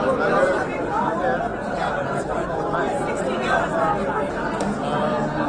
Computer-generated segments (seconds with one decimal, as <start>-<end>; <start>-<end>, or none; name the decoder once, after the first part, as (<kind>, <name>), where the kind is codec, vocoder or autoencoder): none